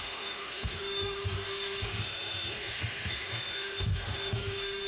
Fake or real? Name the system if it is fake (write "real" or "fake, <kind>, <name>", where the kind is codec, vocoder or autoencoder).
fake, autoencoder, DAC-VAE